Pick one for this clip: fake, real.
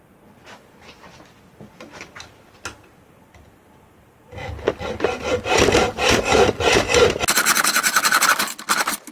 real